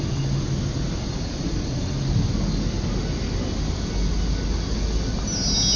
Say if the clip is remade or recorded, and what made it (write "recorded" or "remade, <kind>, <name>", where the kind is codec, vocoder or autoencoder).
recorded